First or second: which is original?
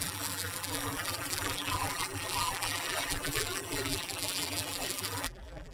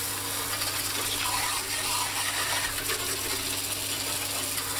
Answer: second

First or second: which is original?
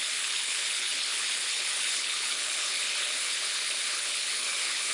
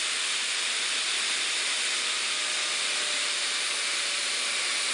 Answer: second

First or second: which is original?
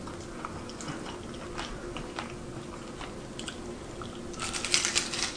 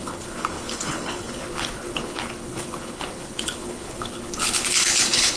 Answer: first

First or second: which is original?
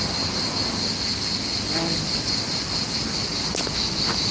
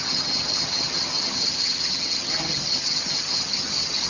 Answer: first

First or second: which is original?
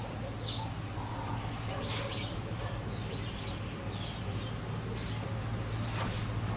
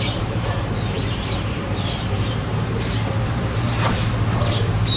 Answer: first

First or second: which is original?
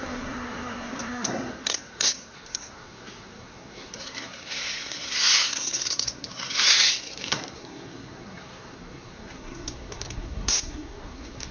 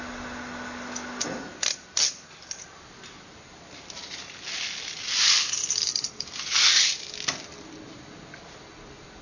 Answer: second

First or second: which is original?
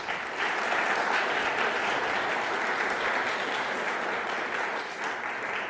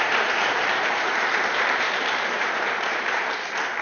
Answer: first